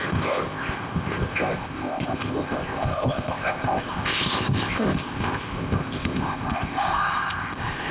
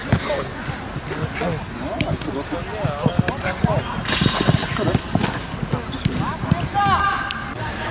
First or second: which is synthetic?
first